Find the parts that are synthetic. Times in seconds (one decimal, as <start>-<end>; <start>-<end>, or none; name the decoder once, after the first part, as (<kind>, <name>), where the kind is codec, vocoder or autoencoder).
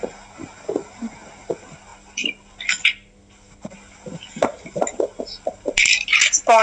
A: none